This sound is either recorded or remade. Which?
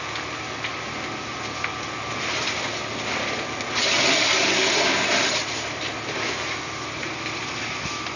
recorded